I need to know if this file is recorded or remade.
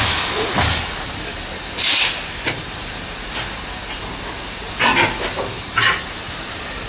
recorded